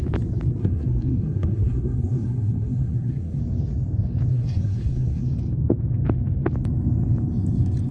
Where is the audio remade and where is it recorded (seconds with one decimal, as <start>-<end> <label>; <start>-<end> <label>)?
0.0-0.6 recorded; 0.6-3.4 remade; 3.4-4.3 recorded; 4.3-5.2 remade; 5.2-7.9 recorded